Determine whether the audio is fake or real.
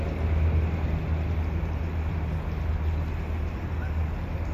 real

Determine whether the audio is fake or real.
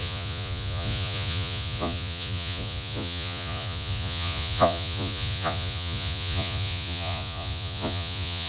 fake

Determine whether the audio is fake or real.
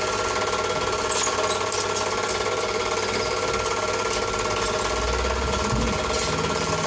real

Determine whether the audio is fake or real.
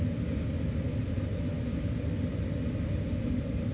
real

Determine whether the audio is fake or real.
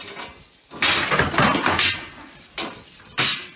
real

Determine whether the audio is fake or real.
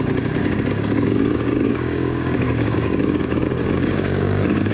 fake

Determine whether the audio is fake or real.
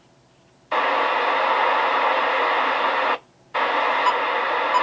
real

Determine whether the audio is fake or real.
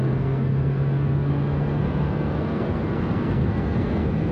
fake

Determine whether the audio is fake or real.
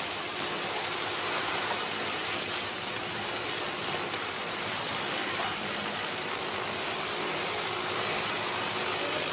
real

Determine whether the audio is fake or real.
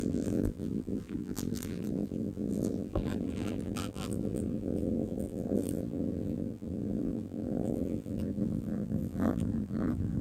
fake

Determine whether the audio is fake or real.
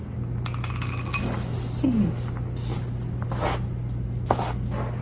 real